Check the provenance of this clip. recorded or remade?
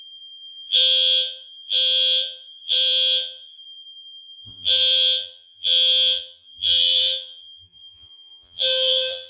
remade